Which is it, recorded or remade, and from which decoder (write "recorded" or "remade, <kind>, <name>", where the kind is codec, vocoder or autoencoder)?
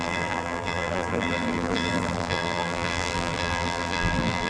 remade, vocoder, BigVGAN v2